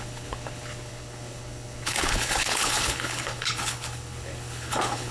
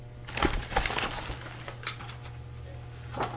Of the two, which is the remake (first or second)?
first